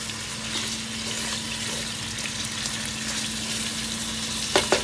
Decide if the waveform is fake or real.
real